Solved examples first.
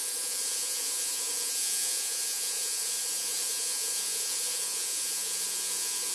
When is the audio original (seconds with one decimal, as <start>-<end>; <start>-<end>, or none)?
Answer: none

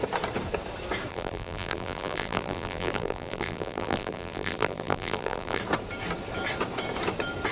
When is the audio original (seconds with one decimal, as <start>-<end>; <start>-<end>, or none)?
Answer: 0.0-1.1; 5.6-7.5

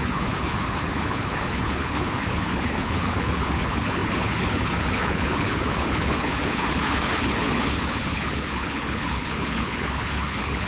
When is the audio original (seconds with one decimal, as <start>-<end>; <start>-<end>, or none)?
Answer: none

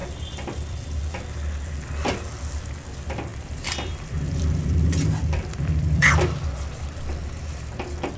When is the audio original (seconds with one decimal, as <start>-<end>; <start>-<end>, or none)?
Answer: 1.0-3.3; 6.1-8.2

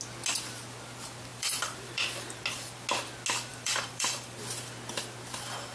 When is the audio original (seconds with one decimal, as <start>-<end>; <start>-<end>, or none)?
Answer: 0.0-1.3; 2.4-3.5; 4.4-5.7

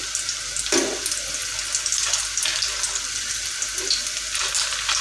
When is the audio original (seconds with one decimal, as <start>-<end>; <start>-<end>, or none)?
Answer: 0.0-5.0

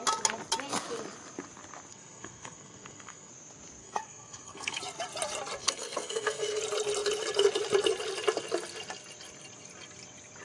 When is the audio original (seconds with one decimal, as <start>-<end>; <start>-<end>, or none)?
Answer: 0.0-1.9; 3.3-3.8; 4.8-5.6; 6.6-10.4

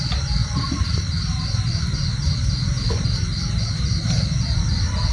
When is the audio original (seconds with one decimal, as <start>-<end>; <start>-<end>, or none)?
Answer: 0.0-5.1